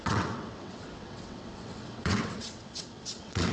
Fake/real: fake